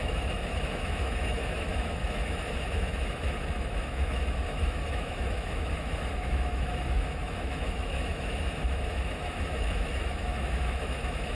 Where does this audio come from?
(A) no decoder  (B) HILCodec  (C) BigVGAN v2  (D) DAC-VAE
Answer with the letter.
D